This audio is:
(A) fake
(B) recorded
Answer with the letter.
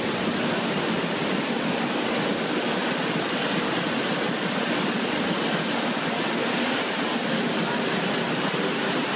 B